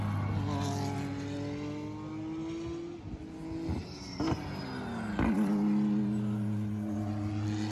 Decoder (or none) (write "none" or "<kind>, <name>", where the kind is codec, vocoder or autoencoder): none